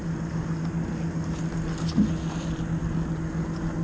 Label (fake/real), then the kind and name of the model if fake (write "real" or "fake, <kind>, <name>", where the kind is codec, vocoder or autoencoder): real